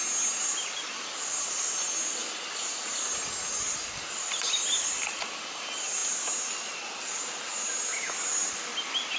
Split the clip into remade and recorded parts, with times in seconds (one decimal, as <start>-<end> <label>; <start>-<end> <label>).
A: 0.0-9.2 recorded